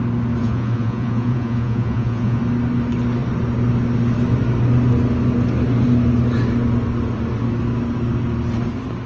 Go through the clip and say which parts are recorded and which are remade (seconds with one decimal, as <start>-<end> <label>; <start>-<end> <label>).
0.0-0.4 recorded; 0.4-2.4 remade; 2.4-9.1 recorded